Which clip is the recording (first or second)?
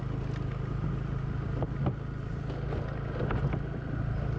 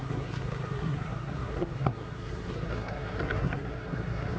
first